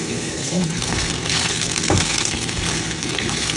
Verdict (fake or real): fake